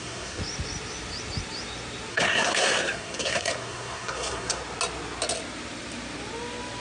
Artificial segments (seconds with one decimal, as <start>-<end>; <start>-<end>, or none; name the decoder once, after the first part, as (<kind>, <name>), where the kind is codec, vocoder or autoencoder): 0.0-0.4 (codec, SNAC); 2.1-4.6